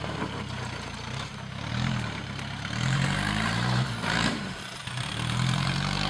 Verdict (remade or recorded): remade